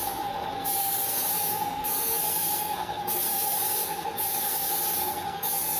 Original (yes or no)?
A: no